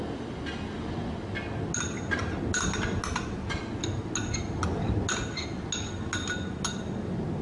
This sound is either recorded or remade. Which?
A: recorded